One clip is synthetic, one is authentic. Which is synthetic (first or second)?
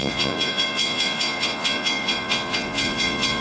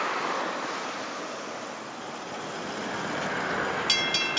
first